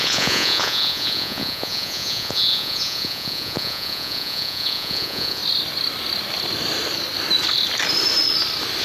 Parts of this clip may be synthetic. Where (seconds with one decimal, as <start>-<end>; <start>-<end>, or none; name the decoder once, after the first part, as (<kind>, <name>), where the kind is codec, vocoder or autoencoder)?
0.0-5.4 (vocoder, Vocos)

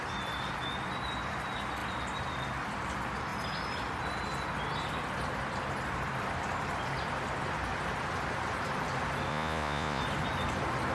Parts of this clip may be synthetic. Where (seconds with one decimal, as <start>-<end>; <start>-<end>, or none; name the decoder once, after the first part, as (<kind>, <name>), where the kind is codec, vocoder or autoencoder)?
9.3-10.0 (vocoder, Vocos)

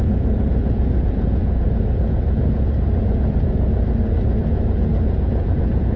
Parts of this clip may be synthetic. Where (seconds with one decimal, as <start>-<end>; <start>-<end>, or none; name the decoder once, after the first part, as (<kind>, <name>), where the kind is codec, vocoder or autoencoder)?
0.0-6.0 (vocoder, Vocos)

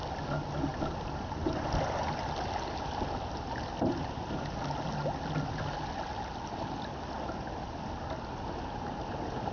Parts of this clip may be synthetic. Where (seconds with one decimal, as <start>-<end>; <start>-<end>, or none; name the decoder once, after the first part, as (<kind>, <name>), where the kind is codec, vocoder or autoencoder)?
none